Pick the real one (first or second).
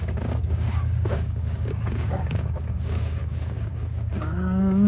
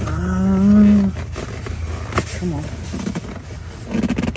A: second